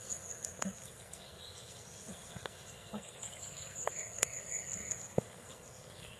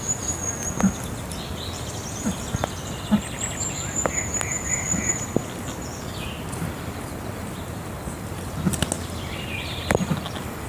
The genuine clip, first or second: second